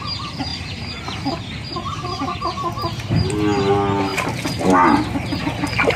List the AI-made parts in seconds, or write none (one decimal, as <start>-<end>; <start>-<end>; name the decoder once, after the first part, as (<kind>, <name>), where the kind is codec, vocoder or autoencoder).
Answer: none